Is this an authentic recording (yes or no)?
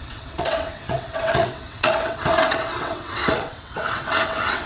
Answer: no